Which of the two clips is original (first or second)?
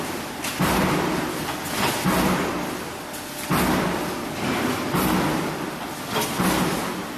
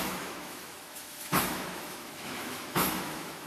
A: first